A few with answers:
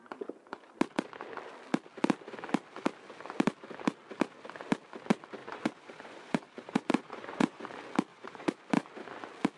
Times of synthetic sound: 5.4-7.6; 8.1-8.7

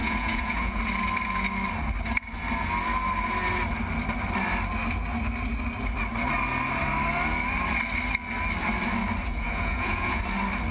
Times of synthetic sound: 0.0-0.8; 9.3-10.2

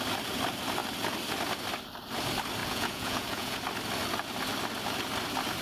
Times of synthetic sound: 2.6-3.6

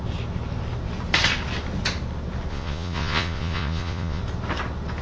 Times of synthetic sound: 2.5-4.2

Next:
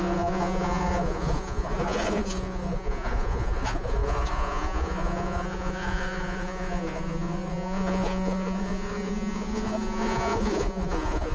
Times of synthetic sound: 0.0-11.3

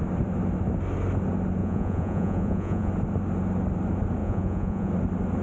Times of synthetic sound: 1.6-2.9; 4.2-4.9

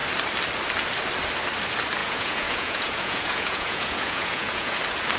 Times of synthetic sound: 2.0-4.8

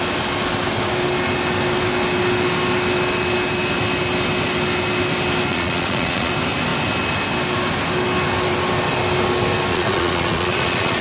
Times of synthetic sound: 5.5-6.3; 9.7-11.0